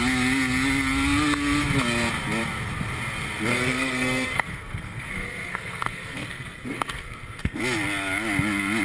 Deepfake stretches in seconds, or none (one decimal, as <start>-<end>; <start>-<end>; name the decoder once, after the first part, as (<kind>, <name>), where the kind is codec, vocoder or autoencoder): 3.5-7.6 (codec, SNAC)